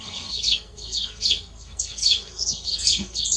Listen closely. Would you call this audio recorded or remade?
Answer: remade